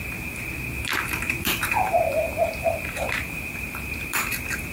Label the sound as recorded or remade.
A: remade